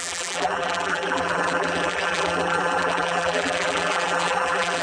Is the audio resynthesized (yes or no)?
yes